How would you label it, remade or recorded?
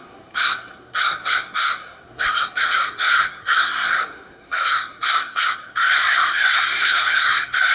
remade